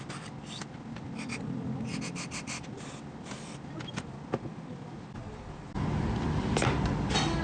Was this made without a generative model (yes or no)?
yes